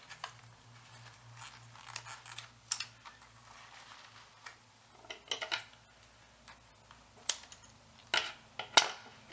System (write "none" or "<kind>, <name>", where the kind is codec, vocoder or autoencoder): none